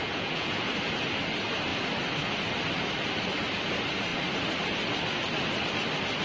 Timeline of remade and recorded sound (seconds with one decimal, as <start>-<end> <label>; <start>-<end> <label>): 0.0-0.7 remade; 0.7-6.2 recorded